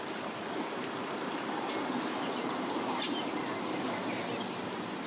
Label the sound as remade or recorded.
recorded